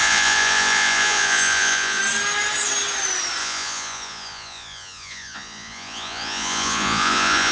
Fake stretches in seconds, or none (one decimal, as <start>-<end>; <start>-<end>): 0.0-2.0; 3.4-7.5